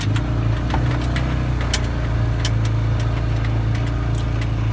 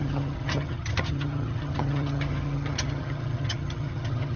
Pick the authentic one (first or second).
first